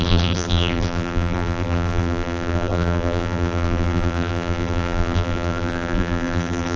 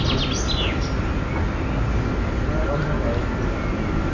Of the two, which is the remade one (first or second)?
first